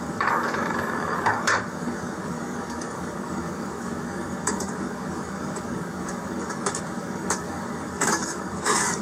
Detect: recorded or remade remade